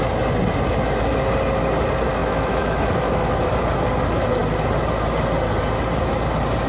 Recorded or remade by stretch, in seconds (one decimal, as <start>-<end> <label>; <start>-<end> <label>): 0.0-2.2 recorded; 2.2-3.5 remade; 3.5-6.7 recorded